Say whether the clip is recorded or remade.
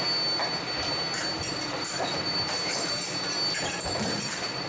recorded